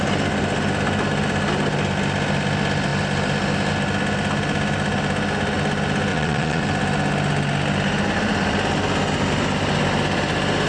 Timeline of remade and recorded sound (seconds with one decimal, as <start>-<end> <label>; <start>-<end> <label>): 0.0-6.1 recorded; 6.1-6.6 remade; 6.6-10.7 recorded